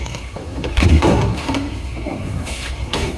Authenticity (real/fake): fake